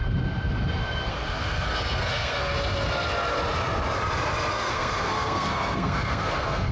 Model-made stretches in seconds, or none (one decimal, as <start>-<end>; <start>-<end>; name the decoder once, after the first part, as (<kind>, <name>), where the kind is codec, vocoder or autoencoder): 1.1-2.5 (codec, SNAC); 4.5-6.7